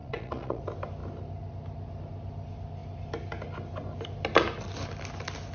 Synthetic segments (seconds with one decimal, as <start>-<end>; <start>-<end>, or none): 0.0-0.6